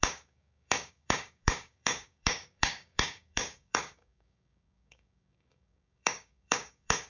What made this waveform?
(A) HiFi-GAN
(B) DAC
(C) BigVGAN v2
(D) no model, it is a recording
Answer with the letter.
B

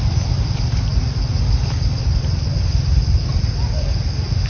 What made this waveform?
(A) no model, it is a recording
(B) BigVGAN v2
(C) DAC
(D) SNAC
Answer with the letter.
A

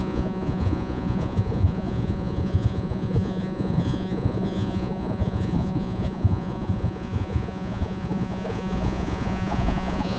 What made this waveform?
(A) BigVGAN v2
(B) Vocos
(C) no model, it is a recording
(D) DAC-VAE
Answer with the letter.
B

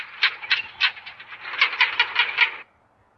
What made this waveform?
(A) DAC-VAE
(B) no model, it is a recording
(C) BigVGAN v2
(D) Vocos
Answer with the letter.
B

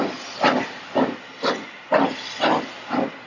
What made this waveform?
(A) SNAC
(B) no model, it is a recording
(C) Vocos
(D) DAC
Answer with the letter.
B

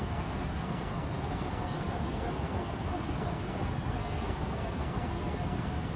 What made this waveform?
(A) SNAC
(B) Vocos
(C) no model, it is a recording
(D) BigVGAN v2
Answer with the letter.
A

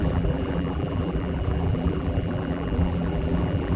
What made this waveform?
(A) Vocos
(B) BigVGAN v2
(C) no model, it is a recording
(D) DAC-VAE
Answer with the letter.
B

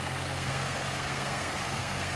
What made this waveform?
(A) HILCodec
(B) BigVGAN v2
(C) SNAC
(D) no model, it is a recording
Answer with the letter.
C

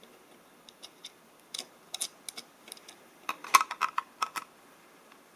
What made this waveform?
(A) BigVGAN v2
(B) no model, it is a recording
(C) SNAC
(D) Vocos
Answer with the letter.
B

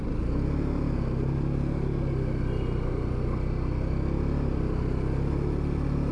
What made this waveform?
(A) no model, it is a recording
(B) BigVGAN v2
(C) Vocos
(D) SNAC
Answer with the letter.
A